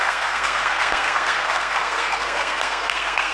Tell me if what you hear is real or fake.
fake